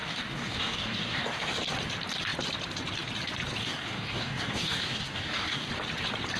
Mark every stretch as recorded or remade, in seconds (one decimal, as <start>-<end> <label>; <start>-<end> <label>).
0.0-1.6 remade; 1.6-3.6 recorded; 3.6-5.7 remade; 5.7-6.4 recorded